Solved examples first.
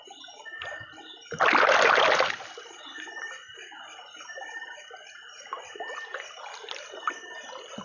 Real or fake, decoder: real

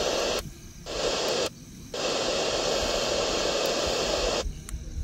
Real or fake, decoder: real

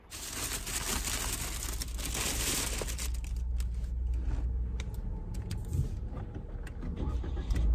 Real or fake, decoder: real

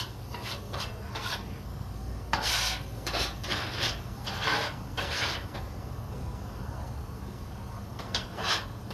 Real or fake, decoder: fake, codec, SNAC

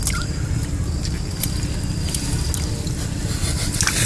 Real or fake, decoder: real